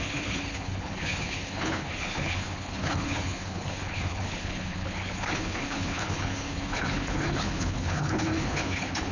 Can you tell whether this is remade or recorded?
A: remade